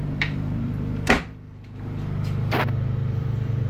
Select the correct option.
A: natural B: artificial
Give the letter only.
B